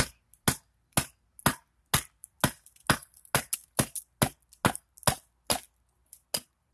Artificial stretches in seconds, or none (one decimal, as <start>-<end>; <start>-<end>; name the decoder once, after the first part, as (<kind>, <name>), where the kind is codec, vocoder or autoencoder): none